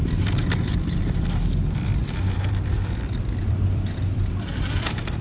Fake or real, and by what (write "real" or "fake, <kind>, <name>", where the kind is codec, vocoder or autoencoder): fake, vocoder, BigVGAN v2